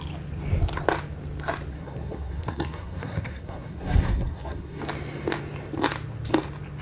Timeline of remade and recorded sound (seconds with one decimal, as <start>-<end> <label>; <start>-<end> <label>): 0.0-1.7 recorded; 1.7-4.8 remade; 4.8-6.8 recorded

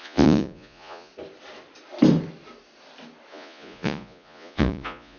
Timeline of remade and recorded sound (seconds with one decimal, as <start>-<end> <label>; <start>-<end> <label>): 0.0-1.1 remade; 1.1-3.3 recorded; 3.3-5.2 remade

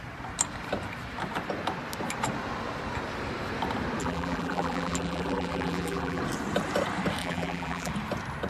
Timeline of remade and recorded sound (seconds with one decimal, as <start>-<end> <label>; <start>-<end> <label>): 0.0-4.0 recorded; 4.0-6.2 remade; 6.2-7.2 recorded; 7.2-7.9 remade; 7.9-8.5 recorded

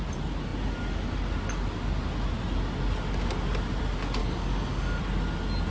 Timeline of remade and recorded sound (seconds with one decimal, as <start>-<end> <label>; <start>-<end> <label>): 0.0-4.2 recorded; 4.2-5.0 remade; 5.0-5.7 recorded

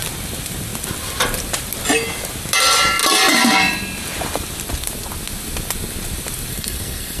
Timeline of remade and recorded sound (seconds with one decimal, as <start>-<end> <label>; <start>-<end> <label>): 0.0-6.5 recorded; 6.5-7.2 remade

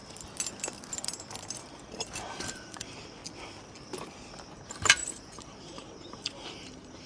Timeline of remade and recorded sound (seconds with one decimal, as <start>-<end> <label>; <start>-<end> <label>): 0.0-1.6 recorded; 1.6-3.2 remade; 3.2-4.5 recorded; 4.5-7.1 remade